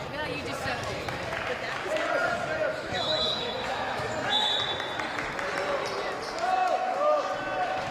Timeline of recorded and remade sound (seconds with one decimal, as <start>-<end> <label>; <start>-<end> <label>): 0.0-2.7 recorded; 2.7-4.5 remade; 4.5-6.6 recorded; 6.6-7.2 remade; 7.2-7.9 recorded